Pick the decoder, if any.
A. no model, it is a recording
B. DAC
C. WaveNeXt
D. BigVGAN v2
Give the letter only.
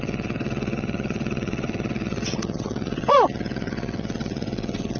C